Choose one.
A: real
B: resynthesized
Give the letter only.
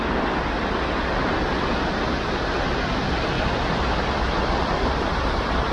A